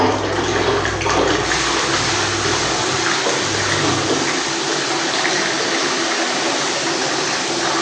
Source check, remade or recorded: recorded